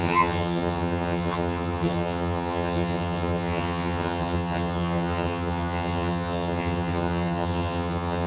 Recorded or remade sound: remade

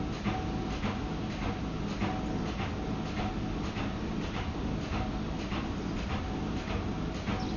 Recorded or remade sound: recorded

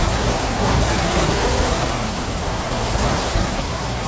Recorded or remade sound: remade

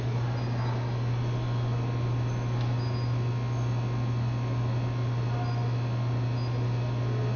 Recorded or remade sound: recorded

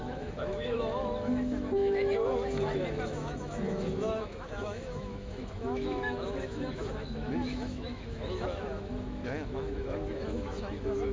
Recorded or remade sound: remade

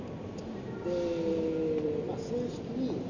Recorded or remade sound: recorded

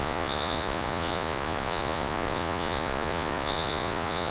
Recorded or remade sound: remade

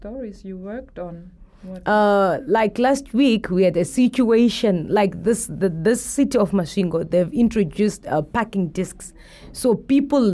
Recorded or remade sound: recorded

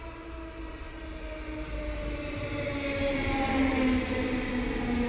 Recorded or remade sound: recorded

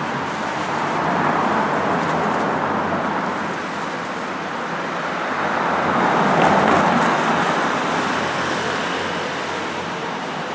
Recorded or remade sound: recorded